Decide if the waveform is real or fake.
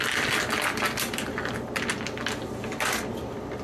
real